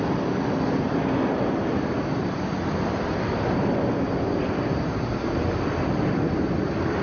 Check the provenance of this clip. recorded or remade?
recorded